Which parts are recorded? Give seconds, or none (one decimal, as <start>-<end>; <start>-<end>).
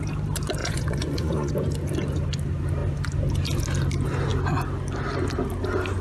0.0-0.6; 1.5-6.0